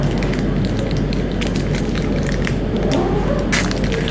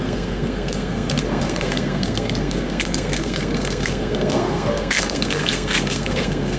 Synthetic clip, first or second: second